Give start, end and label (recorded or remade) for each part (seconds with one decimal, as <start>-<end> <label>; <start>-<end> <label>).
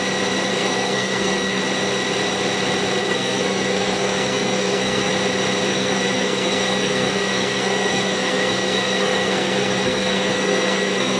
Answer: 0.0-0.5 recorded; 0.5-1.6 remade; 1.6-3.0 recorded; 3.0-5.1 remade; 5.1-5.7 recorded; 5.7-11.2 remade